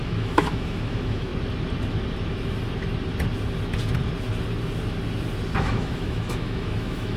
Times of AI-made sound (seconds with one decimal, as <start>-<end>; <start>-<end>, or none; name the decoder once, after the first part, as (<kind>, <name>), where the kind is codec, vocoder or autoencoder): 0.0-1.3 (autoencoder, DAC-VAE); 5.6-7.2